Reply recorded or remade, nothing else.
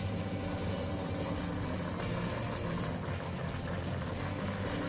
recorded